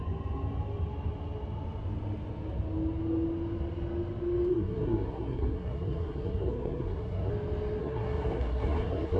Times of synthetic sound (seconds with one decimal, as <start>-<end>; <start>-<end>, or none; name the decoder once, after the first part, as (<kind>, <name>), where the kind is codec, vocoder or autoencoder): 4.5-7.3 (codec, SNAC); 7.8-9.2